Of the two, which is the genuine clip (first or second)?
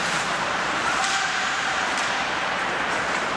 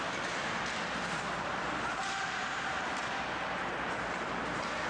second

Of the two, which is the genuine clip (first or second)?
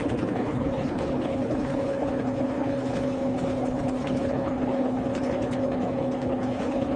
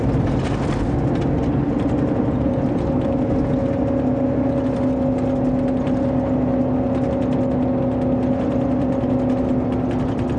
second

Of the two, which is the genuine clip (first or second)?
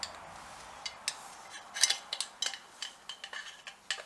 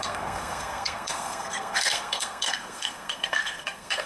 first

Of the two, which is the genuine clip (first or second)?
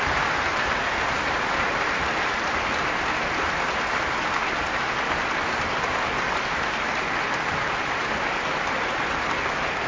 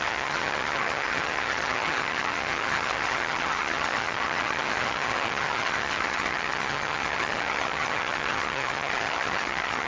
first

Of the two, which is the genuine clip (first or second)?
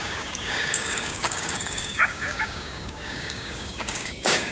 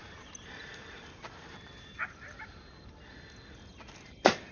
second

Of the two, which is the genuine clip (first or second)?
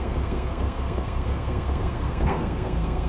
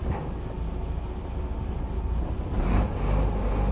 second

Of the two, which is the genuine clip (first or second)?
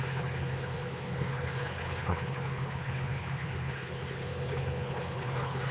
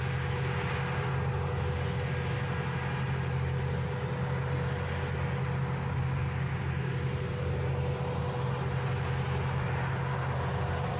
second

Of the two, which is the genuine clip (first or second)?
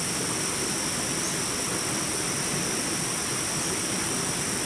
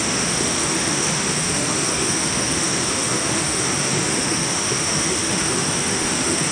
first